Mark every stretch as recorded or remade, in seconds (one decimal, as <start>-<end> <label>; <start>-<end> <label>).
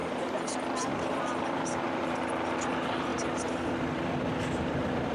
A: 0.0-3.1 remade; 3.1-3.7 recorded; 3.7-5.1 remade